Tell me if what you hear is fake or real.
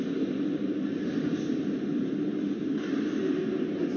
real